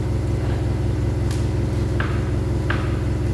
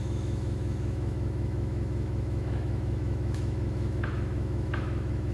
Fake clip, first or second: second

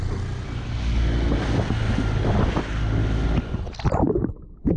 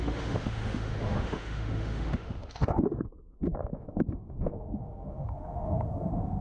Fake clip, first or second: second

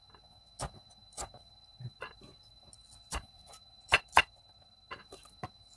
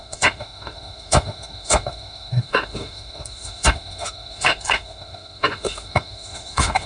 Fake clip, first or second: second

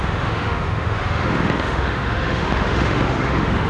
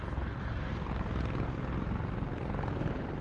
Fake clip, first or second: first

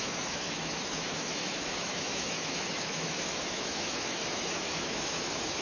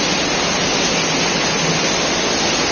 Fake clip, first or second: first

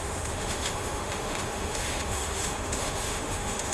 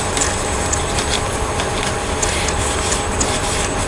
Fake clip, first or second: first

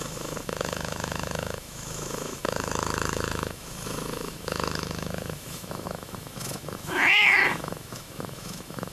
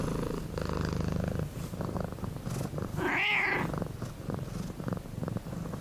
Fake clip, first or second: first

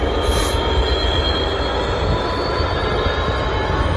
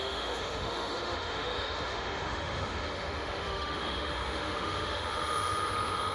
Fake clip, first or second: second